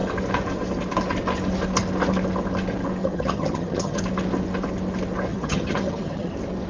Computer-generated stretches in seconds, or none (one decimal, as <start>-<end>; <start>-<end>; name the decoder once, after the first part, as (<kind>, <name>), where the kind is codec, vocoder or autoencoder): 3.0-4.0 (vocoder, HiFi-GAN); 5.3-6.3